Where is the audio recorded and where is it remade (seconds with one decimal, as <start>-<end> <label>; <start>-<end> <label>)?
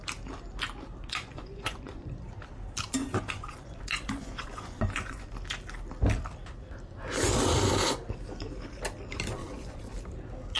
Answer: 0.0-1.0 recorded; 1.0-2.1 remade; 2.1-3.0 recorded; 3.0-5.3 remade; 5.3-9.4 recorded; 9.4-9.9 remade; 9.9-10.6 recorded